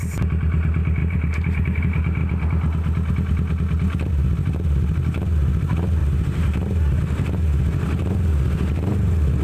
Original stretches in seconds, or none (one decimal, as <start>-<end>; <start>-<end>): 0.0-1.0; 1.8-6.0; 7.0-9.4